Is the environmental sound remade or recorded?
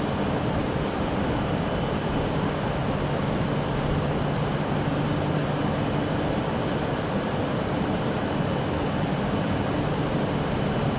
recorded